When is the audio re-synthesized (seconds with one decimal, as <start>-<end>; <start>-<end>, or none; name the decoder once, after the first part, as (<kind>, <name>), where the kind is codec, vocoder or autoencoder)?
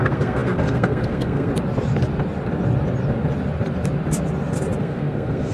0.0-1.5 (codec, SNAC); 4.8-5.5